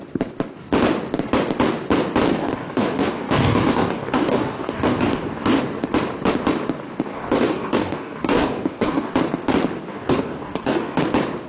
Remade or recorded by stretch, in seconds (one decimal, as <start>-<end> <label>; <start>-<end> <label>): 0.0-2.3 recorded; 2.3-5.6 remade; 5.6-7.1 recorded; 7.1-9.1 remade; 9.1-9.9 recorded; 9.9-11.0 remade; 11.0-11.5 recorded